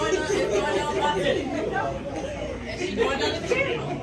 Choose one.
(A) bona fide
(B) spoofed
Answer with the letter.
A